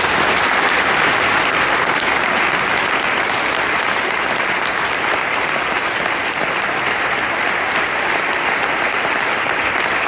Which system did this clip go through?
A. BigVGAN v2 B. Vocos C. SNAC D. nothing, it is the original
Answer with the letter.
D